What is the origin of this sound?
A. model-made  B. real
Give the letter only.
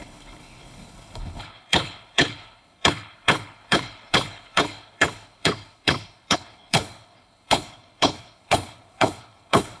A